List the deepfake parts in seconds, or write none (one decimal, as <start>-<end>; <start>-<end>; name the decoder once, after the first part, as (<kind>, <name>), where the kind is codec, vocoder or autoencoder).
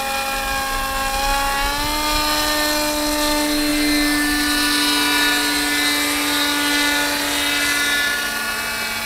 none